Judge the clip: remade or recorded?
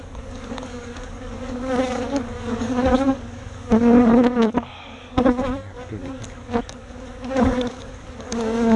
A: remade